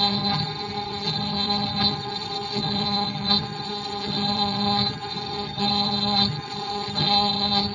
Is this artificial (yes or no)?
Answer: yes